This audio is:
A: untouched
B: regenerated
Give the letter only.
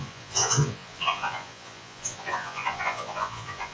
B